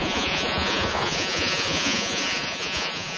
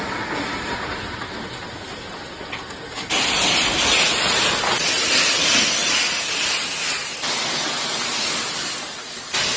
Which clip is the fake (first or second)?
first